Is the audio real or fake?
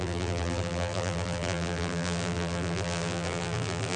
fake